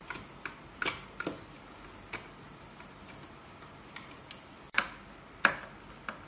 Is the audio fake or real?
real